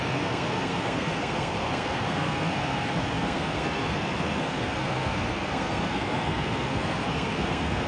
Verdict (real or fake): fake